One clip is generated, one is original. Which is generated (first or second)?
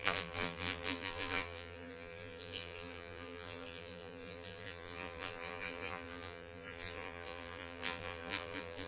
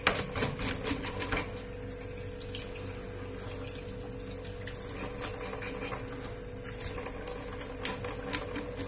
first